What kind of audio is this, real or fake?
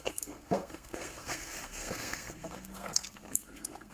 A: fake